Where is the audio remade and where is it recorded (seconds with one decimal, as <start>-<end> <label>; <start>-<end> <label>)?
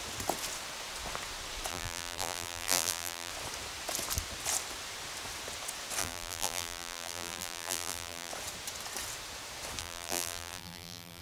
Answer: 0.0-1.7 recorded; 1.7-3.3 remade; 3.3-6.0 recorded; 6.0-8.3 remade; 8.3-9.8 recorded; 9.8-11.2 remade